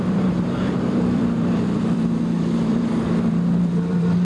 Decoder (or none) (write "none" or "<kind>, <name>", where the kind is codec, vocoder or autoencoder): vocoder, BigVGAN v2